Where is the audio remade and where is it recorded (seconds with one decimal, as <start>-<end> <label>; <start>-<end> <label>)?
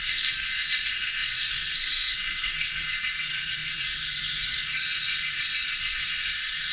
0.0-6.7 remade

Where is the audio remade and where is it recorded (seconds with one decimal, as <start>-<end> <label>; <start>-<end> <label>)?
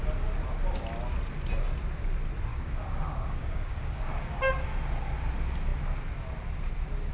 0.0-2.5 recorded; 2.5-4.6 remade; 4.6-7.1 recorded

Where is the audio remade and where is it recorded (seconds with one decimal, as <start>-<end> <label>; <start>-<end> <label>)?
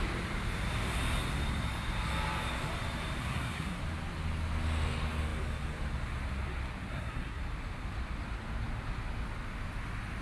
0.0-3.2 recorded; 3.2-3.8 remade; 3.8-6.9 recorded; 6.9-7.4 remade; 7.4-10.2 recorded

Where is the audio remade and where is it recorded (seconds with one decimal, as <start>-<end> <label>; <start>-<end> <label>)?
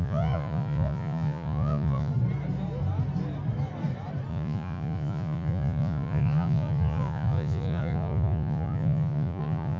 0.0-2.1 remade; 2.1-4.3 recorded; 4.3-9.8 remade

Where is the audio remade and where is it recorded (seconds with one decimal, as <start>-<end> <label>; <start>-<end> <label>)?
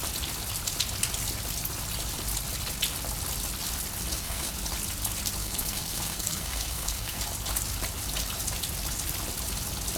0.0-4.1 recorded; 4.1-4.6 remade; 4.6-5.4 recorded; 5.4-7.2 remade; 7.2-10.0 recorded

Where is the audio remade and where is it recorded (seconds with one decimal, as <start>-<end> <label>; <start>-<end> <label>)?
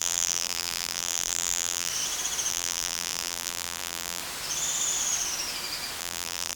0.0-1.9 remade; 1.9-2.5 recorded; 2.5-4.2 remade; 4.2-6.0 recorded; 6.0-6.6 remade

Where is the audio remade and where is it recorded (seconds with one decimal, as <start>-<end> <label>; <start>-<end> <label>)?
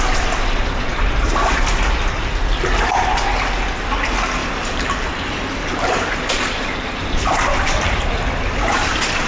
0.0-4.4 recorded; 4.4-9.3 remade